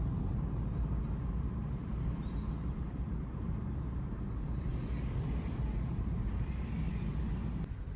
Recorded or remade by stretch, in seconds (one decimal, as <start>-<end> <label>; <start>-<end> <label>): 0.0-4.7 remade; 4.7-5.6 recorded; 5.6-8.0 remade